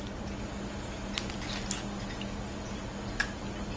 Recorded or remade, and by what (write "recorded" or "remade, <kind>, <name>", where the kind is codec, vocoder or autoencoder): recorded